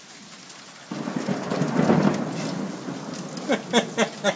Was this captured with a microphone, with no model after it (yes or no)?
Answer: yes